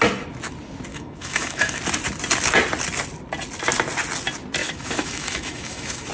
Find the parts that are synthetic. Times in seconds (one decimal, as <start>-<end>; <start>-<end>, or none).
0.9-1.8; 4.6-6.1